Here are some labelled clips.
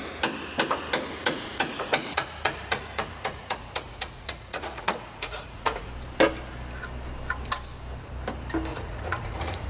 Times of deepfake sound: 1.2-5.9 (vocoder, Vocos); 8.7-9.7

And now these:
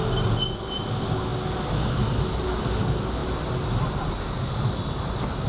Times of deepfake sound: none

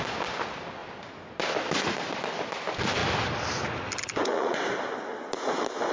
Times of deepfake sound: 4.3-4.8 (vocoder, Vocos)

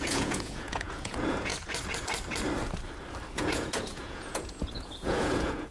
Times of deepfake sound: 0.0-1.5 (vocoder, Vocos); 3.3-5.7